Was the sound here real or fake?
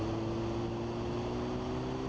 real